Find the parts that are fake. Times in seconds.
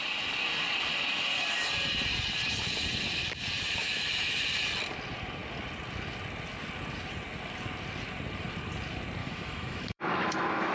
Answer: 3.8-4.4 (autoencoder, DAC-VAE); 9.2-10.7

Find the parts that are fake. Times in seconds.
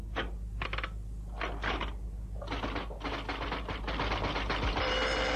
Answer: none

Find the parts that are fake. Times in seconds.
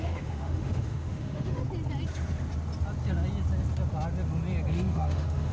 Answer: 0.0-1.6 (autoencoder, DAC-VAE); 4.7-5.5